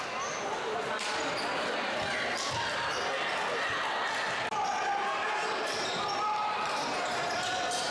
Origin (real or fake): real